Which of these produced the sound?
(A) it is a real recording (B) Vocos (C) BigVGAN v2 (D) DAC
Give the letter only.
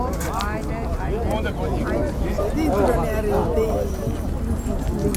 A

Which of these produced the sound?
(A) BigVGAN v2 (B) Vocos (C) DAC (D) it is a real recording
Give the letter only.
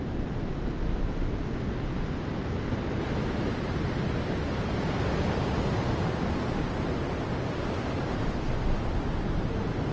D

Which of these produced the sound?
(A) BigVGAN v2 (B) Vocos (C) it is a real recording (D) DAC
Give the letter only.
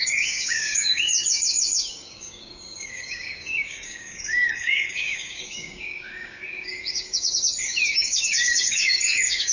D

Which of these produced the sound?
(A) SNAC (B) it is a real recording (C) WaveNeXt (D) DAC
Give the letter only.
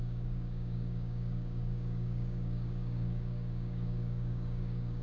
D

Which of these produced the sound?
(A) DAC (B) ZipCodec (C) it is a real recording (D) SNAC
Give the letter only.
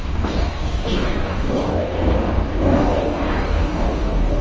A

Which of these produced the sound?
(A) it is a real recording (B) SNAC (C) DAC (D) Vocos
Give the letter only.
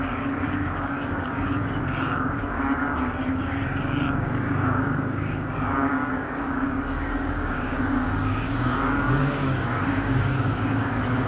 C